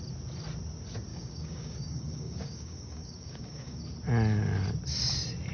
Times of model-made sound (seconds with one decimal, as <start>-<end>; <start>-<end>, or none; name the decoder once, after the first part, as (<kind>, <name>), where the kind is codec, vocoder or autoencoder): 1.1-3.8 (codec, DAC)